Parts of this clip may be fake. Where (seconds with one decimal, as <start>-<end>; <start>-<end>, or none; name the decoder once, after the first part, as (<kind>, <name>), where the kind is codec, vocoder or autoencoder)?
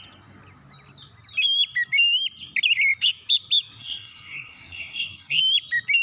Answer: 3.8-5.4 (codec, SNAC)